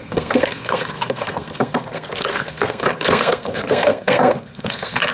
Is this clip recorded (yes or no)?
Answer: no